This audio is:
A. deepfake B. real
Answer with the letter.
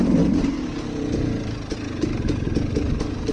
B